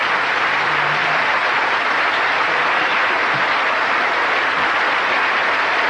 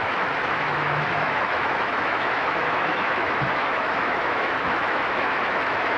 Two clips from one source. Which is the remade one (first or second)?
second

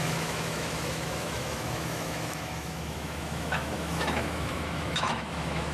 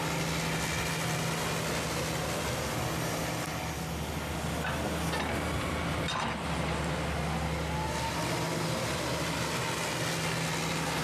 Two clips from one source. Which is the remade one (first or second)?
first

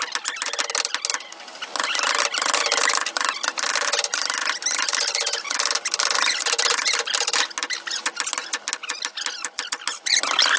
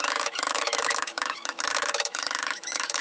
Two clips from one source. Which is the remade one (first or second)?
second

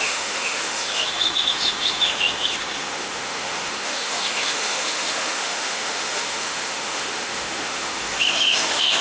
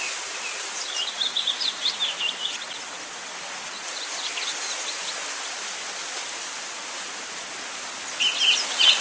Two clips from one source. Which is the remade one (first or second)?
first